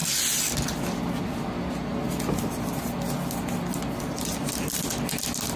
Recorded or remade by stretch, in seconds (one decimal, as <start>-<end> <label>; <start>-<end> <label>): 0.0-5.6 recorded